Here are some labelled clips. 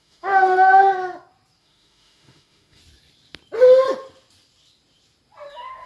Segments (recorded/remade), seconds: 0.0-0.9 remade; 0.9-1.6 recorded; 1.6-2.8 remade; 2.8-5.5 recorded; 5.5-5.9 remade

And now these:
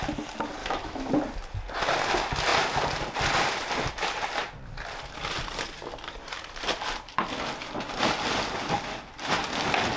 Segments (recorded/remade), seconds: 0.0-0.6 recorded; 0.6-1.1 remade; 1.1-10.0 recorded